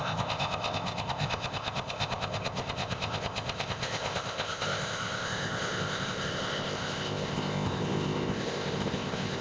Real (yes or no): no